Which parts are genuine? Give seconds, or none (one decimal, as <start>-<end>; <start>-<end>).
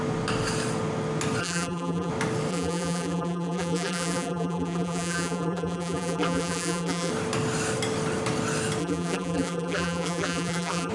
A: 0.0-1.4; 2.1-2.5; 7.1-8.8